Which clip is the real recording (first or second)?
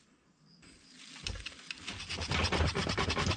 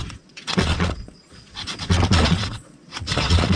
first